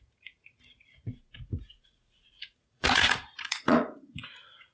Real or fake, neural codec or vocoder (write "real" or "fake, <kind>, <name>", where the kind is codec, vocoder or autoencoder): fake, vocoder, Vocos